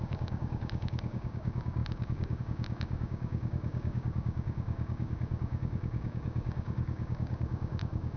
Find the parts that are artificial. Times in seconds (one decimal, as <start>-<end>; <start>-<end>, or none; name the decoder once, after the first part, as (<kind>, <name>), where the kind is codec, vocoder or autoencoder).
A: 0.0-8.2 (codec, DAC)